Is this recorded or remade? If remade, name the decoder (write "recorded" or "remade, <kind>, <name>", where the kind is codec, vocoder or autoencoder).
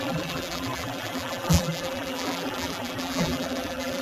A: remade, vocoder, BigVGAN v2